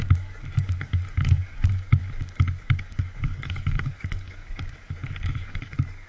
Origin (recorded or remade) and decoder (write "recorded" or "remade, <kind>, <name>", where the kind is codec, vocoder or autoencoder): remade, codec, DAC